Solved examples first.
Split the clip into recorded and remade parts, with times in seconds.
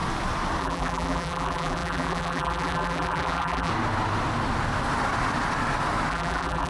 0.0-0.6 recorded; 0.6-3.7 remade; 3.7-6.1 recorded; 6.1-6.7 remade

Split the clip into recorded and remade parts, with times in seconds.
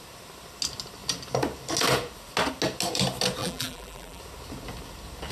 0.0-3.4 recorded; 3.4-4.2 remade; 4.2-5.3 recorded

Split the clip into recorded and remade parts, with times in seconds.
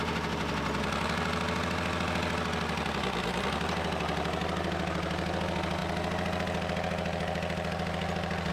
0.0-8.5 recorded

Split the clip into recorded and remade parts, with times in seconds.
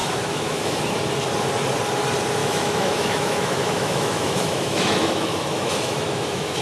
0.0-0.8 remade; 0.8-2.4 recorded; 2.4-6.6 remade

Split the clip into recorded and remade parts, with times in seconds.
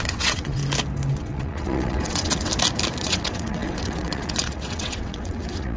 0.0-0.6 remade; 0.6-1.1 recorded; 1.1-2.5 remade; 2.5-3.0 recorded; 3.0-5.8 remade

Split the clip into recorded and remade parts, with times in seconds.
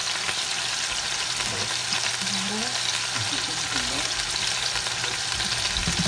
0.0-6.1 recorded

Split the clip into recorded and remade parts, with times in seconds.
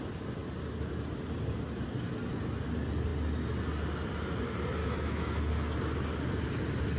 0.0-4.8 recorded; 4.8-5.4 remade; 5.4-7.0 recorded